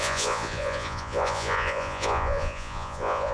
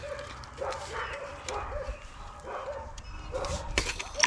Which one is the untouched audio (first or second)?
second